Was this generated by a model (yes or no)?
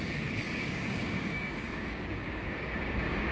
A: yes